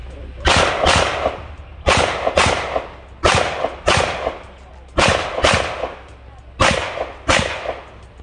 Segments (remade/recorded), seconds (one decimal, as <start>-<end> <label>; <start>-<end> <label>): 0.0-8.2 recorded